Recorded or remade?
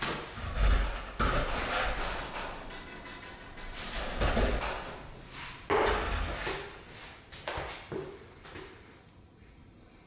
recorded